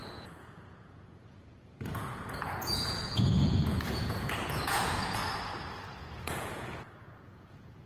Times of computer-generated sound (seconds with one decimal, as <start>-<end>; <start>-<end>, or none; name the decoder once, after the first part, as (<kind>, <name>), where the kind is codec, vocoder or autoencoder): 0.0-5.2 (vocoder, Vocos); 6.0-7.9